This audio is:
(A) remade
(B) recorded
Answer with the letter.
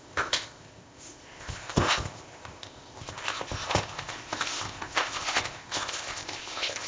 A